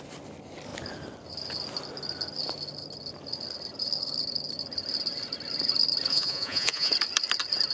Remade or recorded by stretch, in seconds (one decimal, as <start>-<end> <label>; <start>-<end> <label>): 0.0-6.1 recorded; 6.1-6.9 remade; 6.9-7.7 recorded